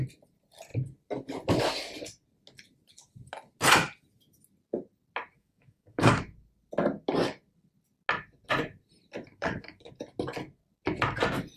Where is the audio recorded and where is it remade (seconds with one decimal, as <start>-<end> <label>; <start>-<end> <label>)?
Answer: 0.0-5.3 recorded; 5.3-6.2 remade; 6.2-9.3 recorded; 9.3-9.9 remade; 9.9-11.6 recorded